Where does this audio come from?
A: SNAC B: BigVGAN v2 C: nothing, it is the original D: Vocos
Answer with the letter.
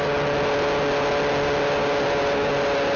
C